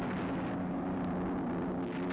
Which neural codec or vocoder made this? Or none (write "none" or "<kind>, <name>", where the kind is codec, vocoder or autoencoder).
none